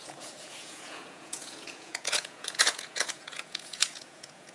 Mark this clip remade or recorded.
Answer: remade